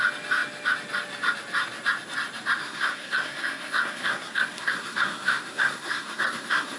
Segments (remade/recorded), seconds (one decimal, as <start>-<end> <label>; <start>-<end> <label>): 0.0-2.6 recorded; 2.6-6.8 remade

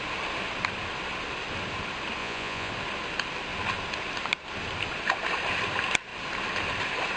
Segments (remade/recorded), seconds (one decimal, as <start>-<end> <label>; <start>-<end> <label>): 0.0-2.2 recorded; 2.2-2.7 remade; 2.7-7.2 recorded

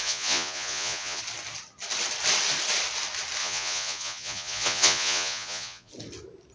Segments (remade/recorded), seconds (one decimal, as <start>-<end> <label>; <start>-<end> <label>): 0.0-1.2 remade; 1.2-3.4 recorded; 3.4-5.9 remade; 5.9-6.5 recorded